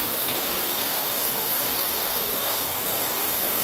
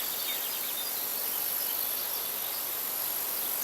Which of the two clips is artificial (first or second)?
first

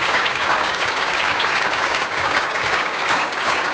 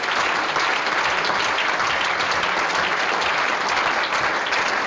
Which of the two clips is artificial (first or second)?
first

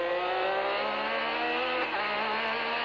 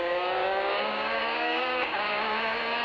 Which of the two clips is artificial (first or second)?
second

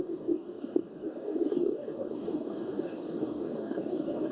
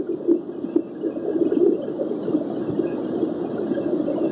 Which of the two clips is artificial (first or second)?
first